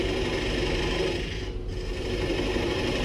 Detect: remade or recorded recorded